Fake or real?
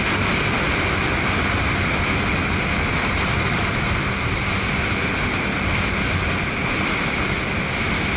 real